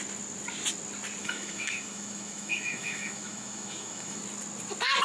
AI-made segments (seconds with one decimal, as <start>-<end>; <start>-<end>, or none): 1.2-4.2